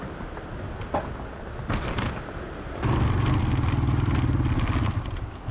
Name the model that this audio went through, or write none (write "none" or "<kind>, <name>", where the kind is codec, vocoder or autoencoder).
none